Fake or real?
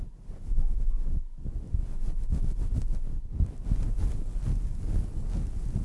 real